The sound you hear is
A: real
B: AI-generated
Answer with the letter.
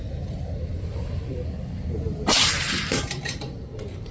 B